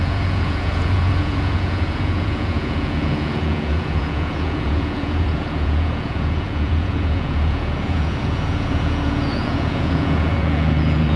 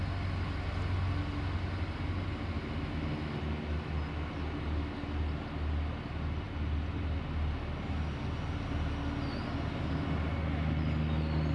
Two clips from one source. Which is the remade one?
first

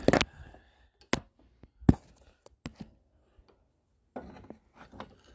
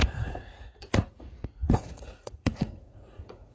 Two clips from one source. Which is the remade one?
second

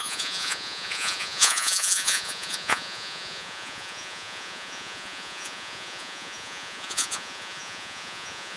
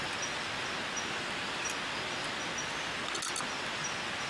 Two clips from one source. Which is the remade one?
first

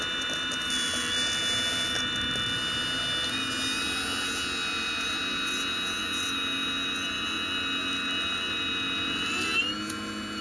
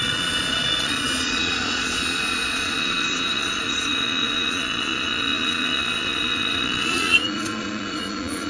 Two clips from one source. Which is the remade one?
second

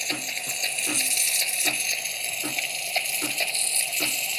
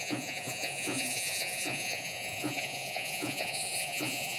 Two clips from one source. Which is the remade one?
second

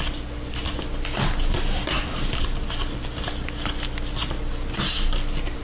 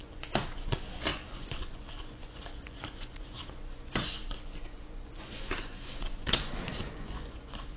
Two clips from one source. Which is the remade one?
second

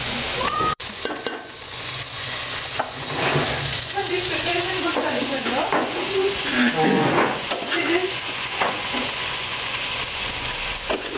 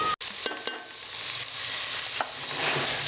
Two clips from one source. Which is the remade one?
first